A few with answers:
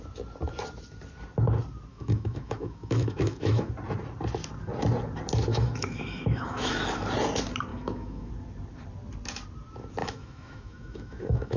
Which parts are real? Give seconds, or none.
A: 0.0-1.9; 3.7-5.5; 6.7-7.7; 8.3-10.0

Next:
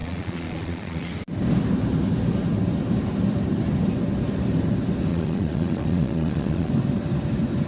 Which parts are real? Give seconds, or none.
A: 1.1-5.1; 6.7-7.7

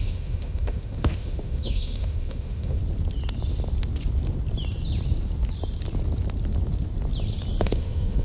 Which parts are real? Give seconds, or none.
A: 2.8-7.6

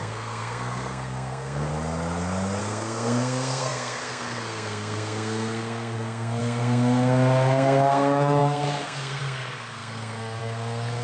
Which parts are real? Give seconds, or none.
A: 1.7-2.6